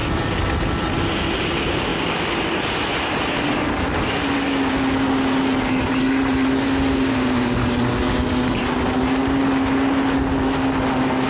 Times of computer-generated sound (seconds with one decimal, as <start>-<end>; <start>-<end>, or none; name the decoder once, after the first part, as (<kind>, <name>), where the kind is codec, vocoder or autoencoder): none